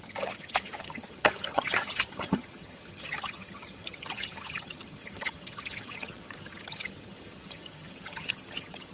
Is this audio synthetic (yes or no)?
yes